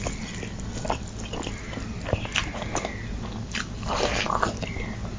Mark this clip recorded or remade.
recorded